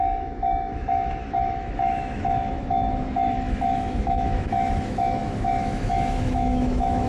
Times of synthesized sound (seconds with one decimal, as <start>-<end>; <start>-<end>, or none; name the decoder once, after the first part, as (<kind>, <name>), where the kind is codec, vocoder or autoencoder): 0.0-7.1 (autoencoder, DAC-VAE)